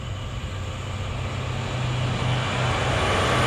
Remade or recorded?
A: recorded